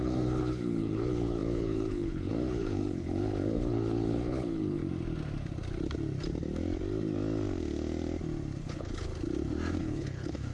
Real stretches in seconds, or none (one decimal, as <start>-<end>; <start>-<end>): 4.8-8.6; 9.1-9.8